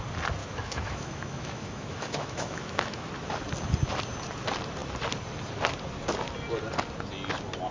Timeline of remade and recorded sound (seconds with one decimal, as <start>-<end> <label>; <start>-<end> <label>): 0.0-0.4 recorded; 0.4-3.1 remade; 3.1-7.7 recorded